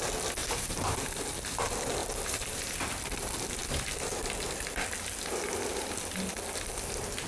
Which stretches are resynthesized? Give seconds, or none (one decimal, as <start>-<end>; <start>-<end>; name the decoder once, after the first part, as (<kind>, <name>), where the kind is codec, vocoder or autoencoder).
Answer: 0.4-1.2 (vocoder, BigVGAN v2); 2.0-2.7